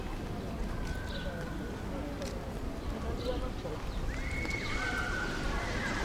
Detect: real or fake real